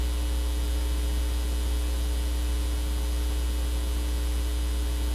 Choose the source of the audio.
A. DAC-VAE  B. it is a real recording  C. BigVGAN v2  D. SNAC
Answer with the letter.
B